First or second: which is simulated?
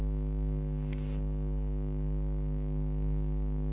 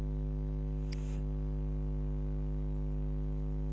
first